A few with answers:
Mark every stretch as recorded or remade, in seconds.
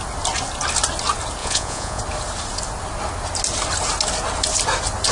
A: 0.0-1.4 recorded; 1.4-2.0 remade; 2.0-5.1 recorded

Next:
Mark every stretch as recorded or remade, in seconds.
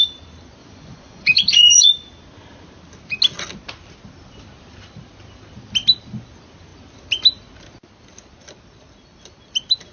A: 0.0-0.6 recorded; 0.6-1.9 remade; 1.9-9.9 recorded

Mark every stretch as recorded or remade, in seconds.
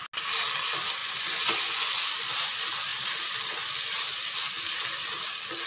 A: 0.0-1.0 recorded; 1.0-1.9 remade; 1.9-5.7 recorded